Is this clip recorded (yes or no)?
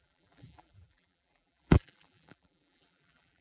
no